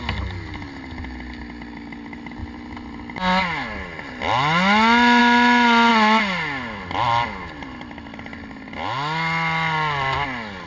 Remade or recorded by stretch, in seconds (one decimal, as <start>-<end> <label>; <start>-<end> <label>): 0.0-10.7 recorded